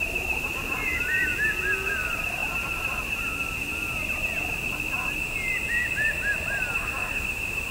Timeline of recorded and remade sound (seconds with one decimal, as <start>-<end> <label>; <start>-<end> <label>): 0.0-1.3 remade; 1.3-1.9 recorded; 1.9-2.4 remade; 2.4-6.9 recorded; 6.9-7.7 remade

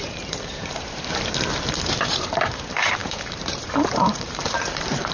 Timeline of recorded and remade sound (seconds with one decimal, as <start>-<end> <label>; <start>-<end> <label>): 0.0-1.1 remade; 1.1-2.0 recorded; 2.0-5.1 remade

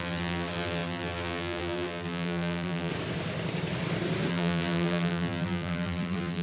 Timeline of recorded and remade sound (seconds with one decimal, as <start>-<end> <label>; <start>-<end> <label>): 0.0-2.9 remade; 2.9-4.3 recorded; 4.3-6.4 remade

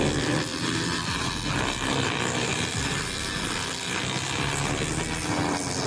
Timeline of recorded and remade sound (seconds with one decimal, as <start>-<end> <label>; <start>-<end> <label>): 0.0-0.5 recorded; 0.5-4.0 remade; 4.0-5.9 recorded

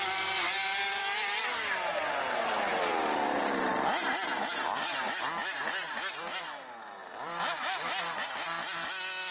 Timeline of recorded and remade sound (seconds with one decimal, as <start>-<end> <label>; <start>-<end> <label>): 0.0-0.6 recorded; 0.6-1.4 remade; 1.4-2.7 recorded; 2.7-3.7 remade; 3.7-7.0 recorded; 7.0-8.3 remade; 8.3-9.3 recorded

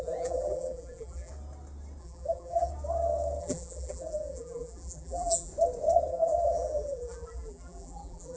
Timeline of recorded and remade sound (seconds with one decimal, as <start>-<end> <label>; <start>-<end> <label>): 0.0-1.3 remade; 1.3-2.0 recorded; 2.0-2.7 remade; 2.7-3.4 recorded; 3.4-5.5 remade; 5.5-6.1 recorded; 6.1-8.4 remade

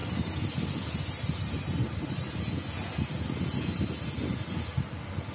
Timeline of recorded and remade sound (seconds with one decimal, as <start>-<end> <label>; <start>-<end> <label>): 0.0-2.4 remade; 2.4-5.3 recorded